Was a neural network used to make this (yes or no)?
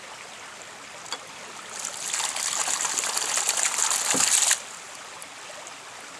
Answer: no